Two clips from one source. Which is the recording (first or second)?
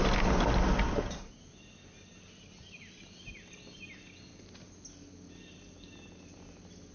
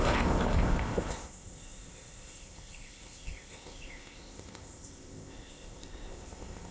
first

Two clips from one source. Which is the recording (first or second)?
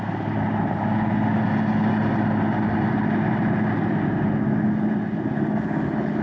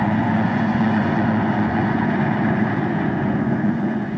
first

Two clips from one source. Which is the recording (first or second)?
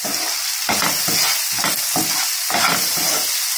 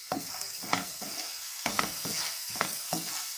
first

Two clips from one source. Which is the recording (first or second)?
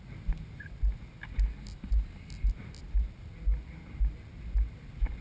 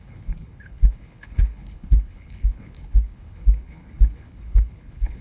first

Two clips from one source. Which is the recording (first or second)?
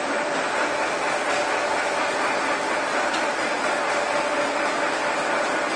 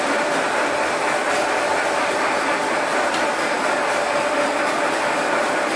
first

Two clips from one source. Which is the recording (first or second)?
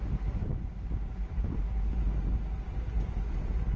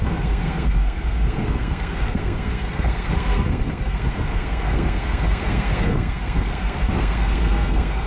first